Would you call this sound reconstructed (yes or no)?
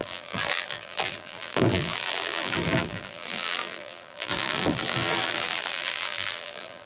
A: yes